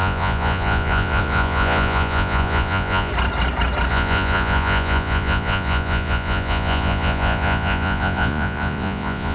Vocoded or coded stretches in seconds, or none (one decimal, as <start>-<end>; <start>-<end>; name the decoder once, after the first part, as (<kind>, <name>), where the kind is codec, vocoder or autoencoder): 0.0-3.1 (vocoder, Vocos); 3.9-9.3